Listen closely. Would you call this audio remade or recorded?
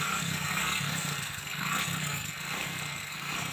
remade